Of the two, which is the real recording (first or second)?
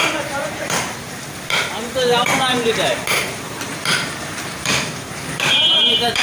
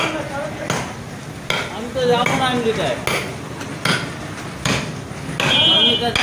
second